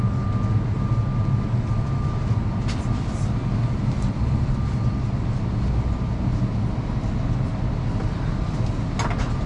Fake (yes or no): no